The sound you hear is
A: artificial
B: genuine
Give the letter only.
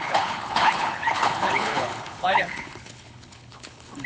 A